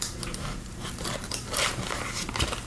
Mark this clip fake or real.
fake